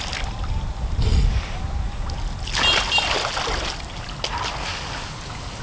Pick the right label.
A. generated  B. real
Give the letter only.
B